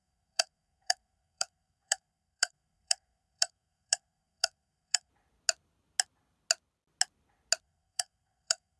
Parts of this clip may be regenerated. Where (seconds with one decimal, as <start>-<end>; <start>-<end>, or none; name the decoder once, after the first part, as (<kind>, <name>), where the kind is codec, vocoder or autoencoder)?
0.0-5.1 (codec, SNAC); 7.6-8.8